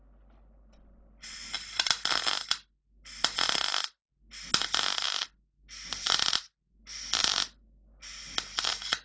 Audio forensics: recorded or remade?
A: recorded